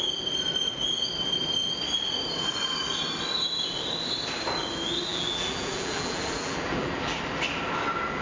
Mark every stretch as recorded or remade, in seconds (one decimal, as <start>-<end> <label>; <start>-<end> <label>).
0.0-5.1 recorded; 5.1-7.2 remade; 7.2-8.2 recorded